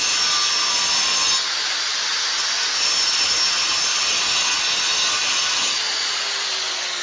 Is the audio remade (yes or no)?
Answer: no